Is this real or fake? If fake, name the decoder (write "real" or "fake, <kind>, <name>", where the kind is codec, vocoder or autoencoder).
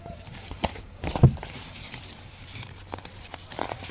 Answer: fake, vocoder, BigVGAN v2